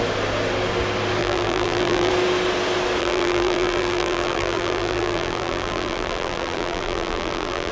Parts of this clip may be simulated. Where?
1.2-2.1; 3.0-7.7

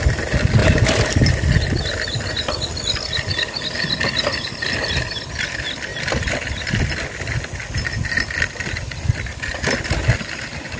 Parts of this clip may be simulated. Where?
none